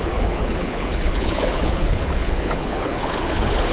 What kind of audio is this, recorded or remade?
remade